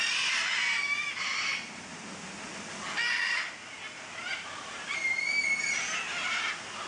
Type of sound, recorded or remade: recorded